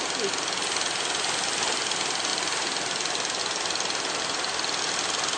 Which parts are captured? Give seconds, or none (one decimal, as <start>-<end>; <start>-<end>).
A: 0.0-5.4